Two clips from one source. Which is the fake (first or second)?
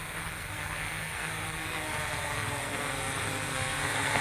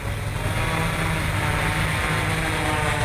first